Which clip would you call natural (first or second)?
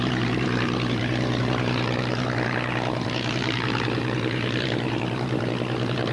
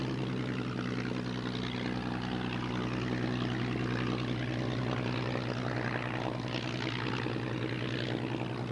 second